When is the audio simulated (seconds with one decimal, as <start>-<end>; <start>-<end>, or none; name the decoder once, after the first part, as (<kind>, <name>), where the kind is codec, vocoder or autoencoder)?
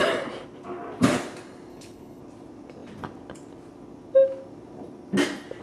1.7-2.2 (codec, HILCodec)